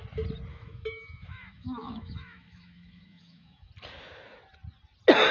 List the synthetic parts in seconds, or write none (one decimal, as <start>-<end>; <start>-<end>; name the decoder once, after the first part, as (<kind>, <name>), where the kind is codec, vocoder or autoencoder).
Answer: 0.5-3.7 (autoencoder, DAC-VAE)